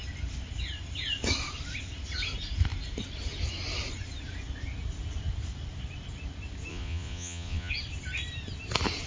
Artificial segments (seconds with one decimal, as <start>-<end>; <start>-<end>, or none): 6.7-7.7